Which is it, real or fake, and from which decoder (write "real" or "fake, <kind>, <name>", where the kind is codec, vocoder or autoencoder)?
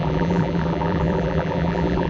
fake, vocoder, BigVGAN v2